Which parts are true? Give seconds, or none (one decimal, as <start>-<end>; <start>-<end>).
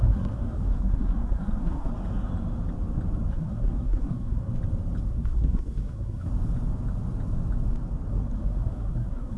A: 1.9-3.3; 4.5-5.1; 6.3-8.1